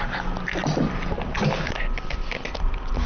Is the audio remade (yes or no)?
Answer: no